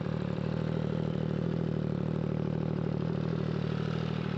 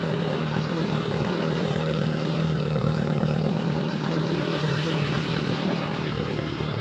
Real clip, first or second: first